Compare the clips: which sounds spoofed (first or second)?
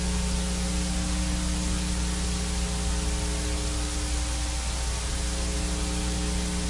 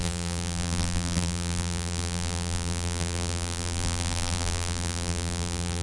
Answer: second